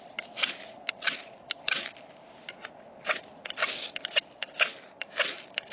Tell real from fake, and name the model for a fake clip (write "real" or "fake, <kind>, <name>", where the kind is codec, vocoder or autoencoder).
real